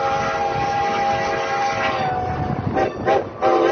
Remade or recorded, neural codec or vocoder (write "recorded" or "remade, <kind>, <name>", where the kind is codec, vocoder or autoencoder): recorded